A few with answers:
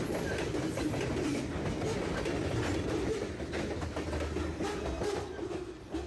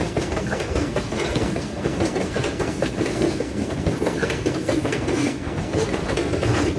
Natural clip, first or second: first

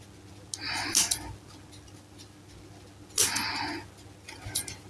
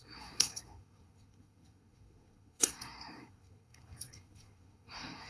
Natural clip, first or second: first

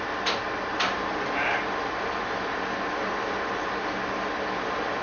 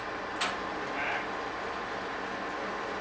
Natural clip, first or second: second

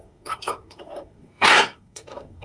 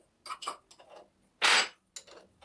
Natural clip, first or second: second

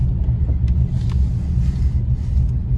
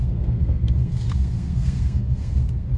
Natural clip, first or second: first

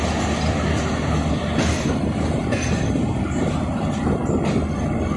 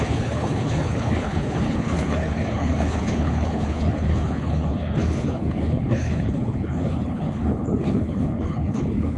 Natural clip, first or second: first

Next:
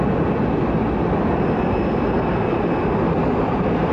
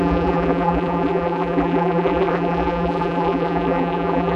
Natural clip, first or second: first